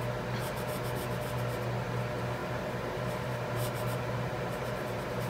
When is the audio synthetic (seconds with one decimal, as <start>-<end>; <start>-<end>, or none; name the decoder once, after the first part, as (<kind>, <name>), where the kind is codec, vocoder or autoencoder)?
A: 2.4-5.3 (vocoder, BigVGAN v2)